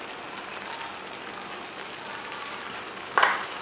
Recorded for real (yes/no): yes